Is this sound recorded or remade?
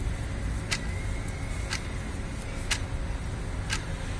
recorded